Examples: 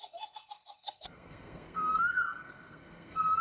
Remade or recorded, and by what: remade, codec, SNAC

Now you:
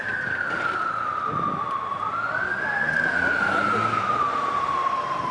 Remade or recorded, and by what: recorded